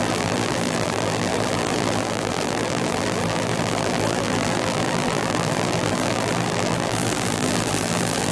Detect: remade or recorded remade